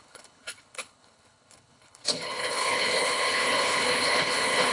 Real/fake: fake